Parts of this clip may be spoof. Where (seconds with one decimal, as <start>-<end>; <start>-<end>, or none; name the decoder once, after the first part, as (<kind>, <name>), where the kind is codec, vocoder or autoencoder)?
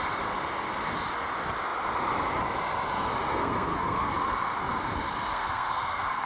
3.4-4.1 (codec, SNAC); 5.3-6.3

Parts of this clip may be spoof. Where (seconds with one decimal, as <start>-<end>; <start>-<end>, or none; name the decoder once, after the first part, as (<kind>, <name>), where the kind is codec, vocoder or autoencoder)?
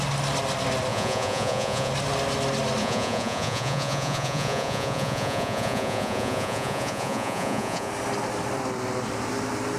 0.9-1.9 (vocoder, Vocos); 2.8-7.9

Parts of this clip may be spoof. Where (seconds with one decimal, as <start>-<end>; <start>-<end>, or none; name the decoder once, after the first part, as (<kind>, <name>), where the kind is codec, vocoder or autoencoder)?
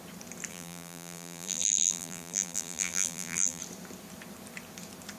0.5-3.6 (vocoder, BigVGAN v2)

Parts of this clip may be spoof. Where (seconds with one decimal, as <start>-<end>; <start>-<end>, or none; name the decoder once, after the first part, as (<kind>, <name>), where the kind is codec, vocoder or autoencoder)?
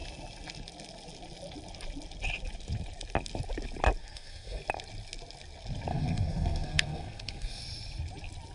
4.0-4.6 (codec, SNAC); 5.9-7.6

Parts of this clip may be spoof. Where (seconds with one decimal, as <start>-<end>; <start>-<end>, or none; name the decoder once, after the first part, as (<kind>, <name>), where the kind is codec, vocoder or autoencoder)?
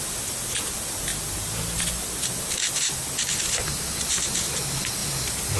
none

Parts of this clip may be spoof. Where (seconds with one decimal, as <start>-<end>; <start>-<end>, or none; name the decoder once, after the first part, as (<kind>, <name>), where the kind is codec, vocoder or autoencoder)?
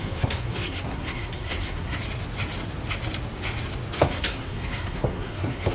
0.0-2.0 (codec, SNAC); 3.9-5.7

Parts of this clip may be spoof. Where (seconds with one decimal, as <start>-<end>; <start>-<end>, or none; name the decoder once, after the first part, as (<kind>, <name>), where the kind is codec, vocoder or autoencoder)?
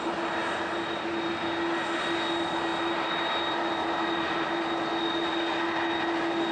none